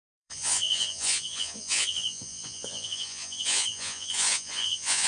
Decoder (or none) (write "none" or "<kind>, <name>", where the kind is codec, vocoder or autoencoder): vocoder, Vocos